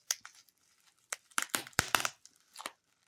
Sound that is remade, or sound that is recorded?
remade